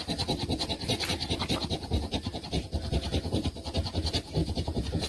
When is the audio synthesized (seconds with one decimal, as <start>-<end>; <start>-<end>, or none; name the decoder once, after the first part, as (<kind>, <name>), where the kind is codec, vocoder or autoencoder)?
4.4-5.1 (vocoder, Vocos)